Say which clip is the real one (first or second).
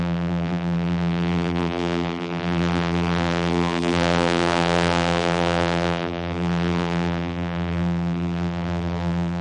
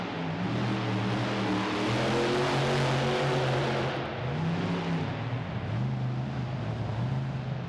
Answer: second